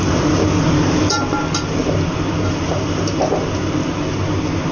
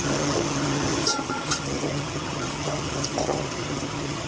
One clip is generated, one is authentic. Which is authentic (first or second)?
first